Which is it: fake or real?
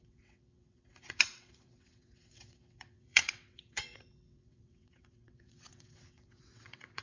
fake